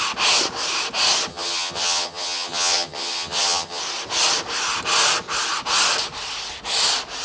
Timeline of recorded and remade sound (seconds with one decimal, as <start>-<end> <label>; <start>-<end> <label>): 0.0-1.3 recorded; 1.3-3.8 remade; 3.8-7.2 recorded

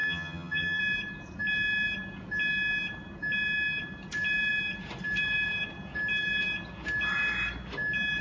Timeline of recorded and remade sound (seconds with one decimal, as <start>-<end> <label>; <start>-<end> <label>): 0.0-0.8 remade; 0.8-8.2 recorded

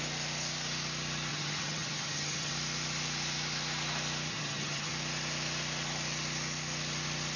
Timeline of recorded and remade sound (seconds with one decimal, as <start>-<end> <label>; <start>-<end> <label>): 0.0-1.3 recorded; 1.3-2.5 remade; 2.5-4.3 recorded; 4.3-4.9 remade; 4.9-7.4 recorded

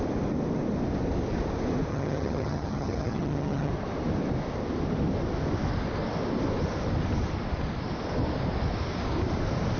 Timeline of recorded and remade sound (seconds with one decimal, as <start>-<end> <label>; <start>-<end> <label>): 0.0-1.9 recorded; 1.9-3.7 remade; 3.7-9.8 recorded

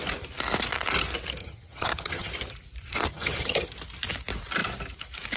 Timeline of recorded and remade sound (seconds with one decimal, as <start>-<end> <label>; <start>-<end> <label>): 0.0-1.4 recorded; 1.4-2.3 remade; 2.3-3.1 recorded; 3.1-3.7 remade; 3.7-5.4 recorded

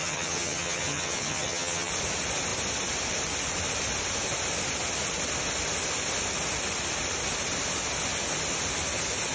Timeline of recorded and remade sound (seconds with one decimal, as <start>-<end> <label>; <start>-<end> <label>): 0.0-1.9 remade; 1.9-9.3 recorded

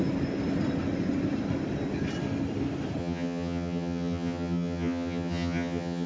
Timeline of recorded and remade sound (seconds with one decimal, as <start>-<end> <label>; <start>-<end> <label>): 0.0-3.0 recorded; 3.0-6.1 remade

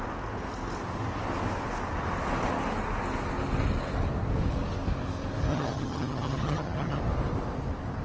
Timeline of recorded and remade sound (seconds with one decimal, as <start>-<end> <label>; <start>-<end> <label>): 0.0-5.5 recorded; 5.5-7.0 remade; 7.0-8.0 recorded